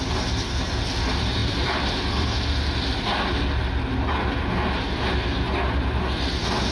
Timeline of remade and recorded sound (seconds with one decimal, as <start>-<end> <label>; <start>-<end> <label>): 0.0-1.4 recorded; 1.4-2.4 remade; 2.4-6.7 recorded